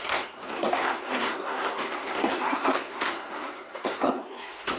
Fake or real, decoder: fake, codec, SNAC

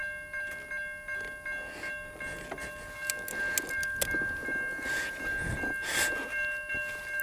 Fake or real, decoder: real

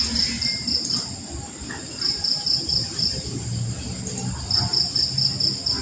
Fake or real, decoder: real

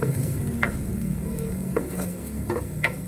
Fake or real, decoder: fake, codec, SNAC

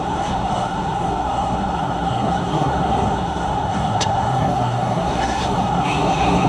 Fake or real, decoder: fake, codec, SNAC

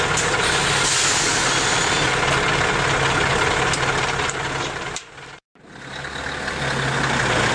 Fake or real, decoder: real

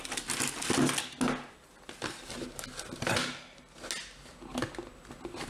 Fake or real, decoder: real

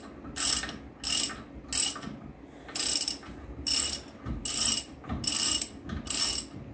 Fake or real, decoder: real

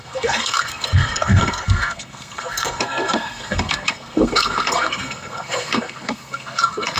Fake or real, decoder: fake, codec, SNAC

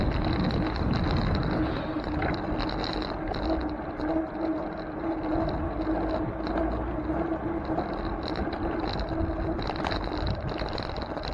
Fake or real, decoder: real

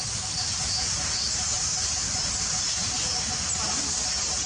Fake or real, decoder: real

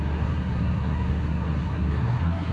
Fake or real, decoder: fake, codec, SNAC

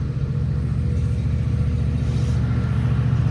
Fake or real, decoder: real